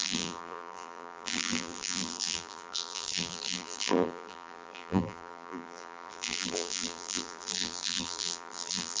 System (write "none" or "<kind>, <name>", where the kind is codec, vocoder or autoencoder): vocoder, BigVGAN v2